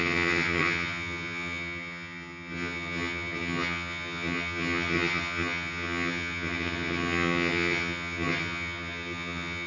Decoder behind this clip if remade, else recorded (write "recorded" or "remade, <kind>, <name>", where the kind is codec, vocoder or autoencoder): remade, vocoder, HiFi-GAN